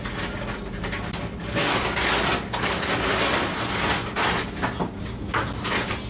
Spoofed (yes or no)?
no